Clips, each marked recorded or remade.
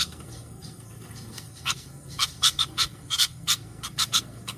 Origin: remade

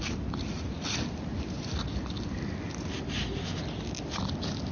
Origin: recorded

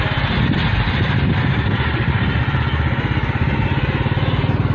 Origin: recorded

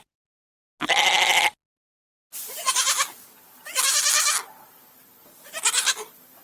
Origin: recorded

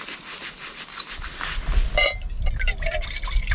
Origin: recorded